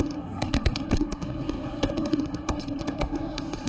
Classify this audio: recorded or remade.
remade